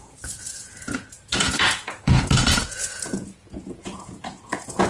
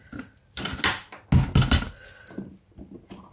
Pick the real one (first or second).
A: second